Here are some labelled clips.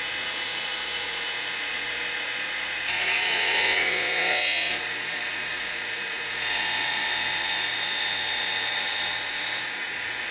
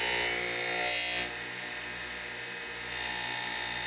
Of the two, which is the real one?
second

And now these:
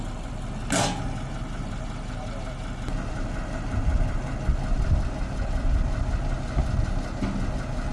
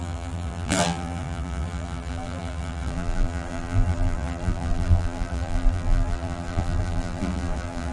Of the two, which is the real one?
first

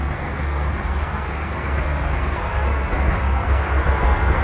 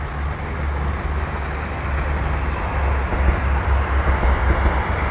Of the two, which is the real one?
second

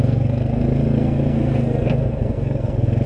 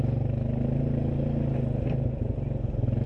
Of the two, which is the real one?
second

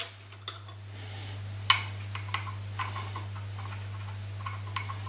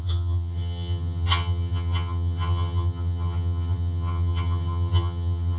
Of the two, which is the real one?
first